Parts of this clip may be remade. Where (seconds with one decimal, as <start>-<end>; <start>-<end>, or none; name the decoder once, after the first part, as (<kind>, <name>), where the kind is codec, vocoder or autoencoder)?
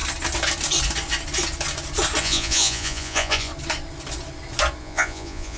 2.2-3.5 (vocoder, Vocos); 4.8-5.6